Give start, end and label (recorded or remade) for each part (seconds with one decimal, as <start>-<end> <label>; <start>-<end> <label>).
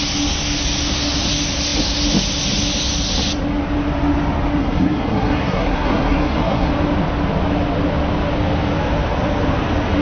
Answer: 0.0-4.6 recorded; 4.6-6.7 remade; 6.7-10.0 recorded